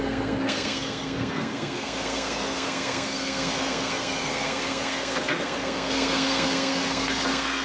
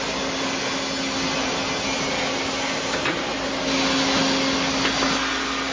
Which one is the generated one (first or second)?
first